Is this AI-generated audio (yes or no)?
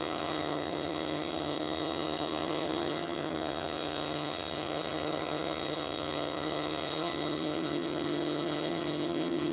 yes